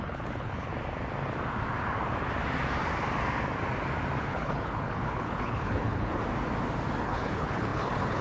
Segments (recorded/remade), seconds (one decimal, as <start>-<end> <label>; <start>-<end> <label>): 0.0-0.7 remade; 0.7-4.2 recorded; 4.2-6.2 remade; 6.2-7.0 recorded; 7.0-8.2 remade

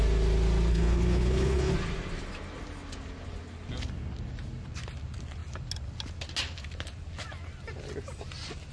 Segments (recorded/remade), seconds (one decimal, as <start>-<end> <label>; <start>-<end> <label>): 0.0-0.7 recorded; 0.7-1.7 remade; 1.7-8.7 recorded